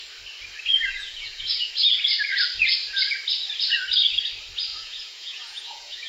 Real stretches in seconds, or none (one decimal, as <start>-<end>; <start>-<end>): 0.0-0.7; 1.7-4.7